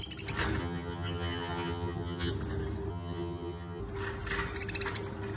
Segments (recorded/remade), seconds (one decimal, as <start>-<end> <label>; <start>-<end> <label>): 0.0-0.6 recorded; 0.6-2.3 remade; 2.3-2.9 recorded; 2.9-3.8 remade; 3.8-5.4 recorded